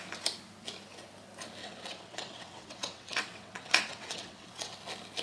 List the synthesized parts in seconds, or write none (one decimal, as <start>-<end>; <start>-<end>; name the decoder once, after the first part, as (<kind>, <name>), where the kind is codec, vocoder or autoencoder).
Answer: 1.6-4.7 (vocoder, WaveNeXt)